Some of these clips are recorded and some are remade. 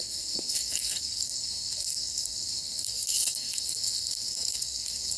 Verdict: remade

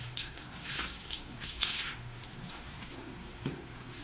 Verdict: remade